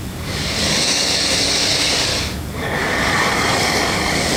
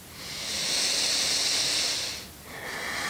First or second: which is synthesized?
first